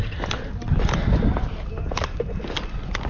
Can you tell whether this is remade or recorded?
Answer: recorded